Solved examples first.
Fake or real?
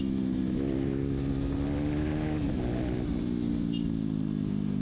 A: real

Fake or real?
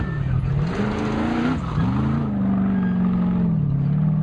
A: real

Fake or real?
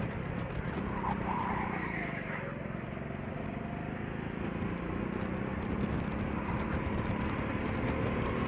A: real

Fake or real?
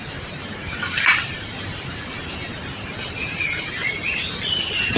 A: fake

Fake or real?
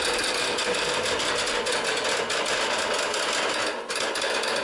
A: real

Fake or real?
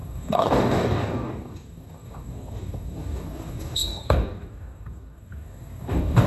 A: fake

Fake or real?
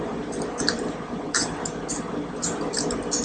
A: real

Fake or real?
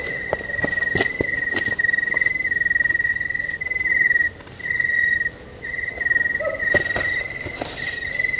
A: real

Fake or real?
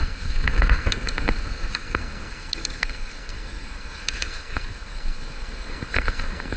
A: fake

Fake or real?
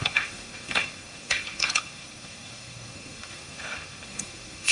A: fake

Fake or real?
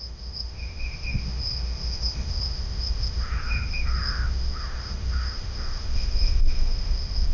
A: fake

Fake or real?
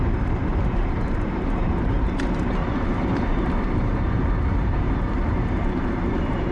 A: fake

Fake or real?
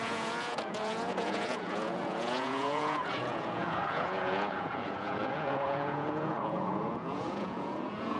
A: fake